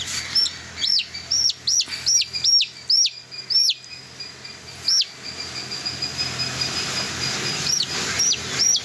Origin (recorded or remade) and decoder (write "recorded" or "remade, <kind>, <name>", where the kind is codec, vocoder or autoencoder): recorded